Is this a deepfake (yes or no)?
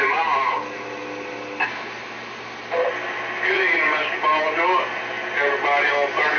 no